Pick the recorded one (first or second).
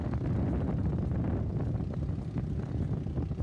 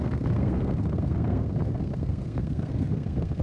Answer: first